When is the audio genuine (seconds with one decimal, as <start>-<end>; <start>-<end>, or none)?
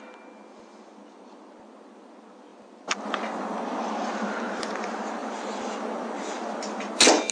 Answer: 0.0-2.5; 3.6-5.2; 6.6-7.3